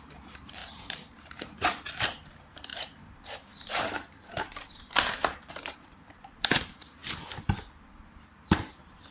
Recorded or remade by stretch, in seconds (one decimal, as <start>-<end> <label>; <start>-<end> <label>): 0.0-7.0 remade; 7.0-7.9 recorded; 7.9-9.1 remade